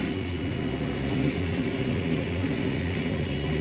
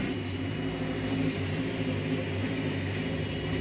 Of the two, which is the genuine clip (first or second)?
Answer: second